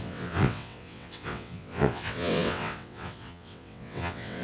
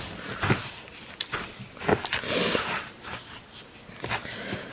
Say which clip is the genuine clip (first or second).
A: second